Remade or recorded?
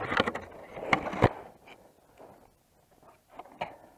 recorded